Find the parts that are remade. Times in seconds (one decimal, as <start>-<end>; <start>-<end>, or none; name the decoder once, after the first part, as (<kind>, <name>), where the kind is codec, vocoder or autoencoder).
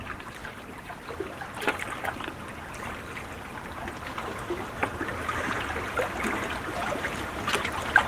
0.4-2.3 (vocoder, BigVGAN v2); 4.8-6.3